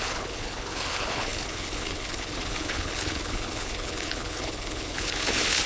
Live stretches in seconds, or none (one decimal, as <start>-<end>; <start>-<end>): none